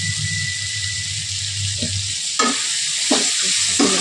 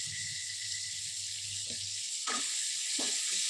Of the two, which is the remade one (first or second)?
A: second